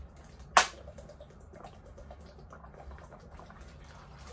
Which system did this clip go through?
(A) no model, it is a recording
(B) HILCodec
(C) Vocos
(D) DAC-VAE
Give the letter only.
A